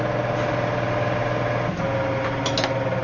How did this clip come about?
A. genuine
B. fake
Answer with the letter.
A